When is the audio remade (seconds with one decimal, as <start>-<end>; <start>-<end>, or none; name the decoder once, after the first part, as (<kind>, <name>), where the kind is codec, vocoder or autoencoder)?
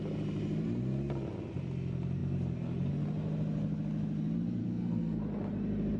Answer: 4.6-5.2 (codec, SNAC)